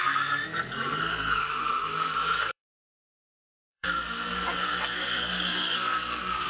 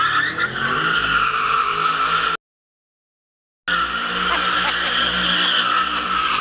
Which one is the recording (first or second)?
second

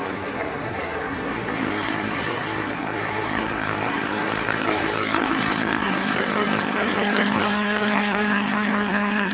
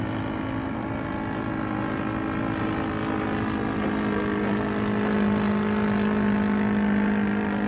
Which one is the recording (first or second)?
second